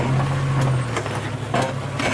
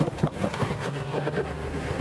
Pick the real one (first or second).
first